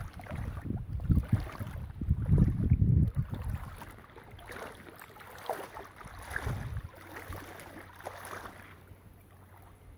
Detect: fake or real real